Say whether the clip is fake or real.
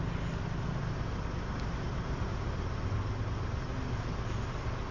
real